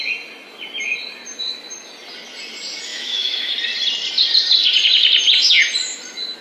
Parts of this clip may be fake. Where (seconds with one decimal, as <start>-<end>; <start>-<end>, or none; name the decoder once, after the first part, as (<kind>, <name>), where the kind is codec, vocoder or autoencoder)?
2.9-3.5 (autoencoder, DAC-VAE)